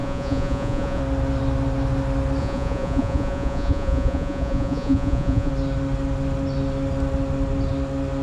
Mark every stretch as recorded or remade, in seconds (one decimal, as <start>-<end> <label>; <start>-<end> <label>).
0.0-1.0 remade; 1.0-2.4 recorded; 2.4-5.5 remade; 5.5-8.2 recorded